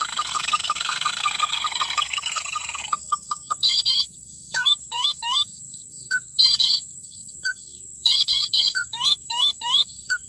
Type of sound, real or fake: fake